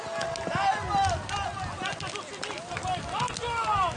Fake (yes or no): no